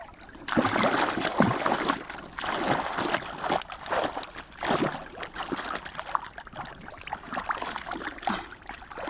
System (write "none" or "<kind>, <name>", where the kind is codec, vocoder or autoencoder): none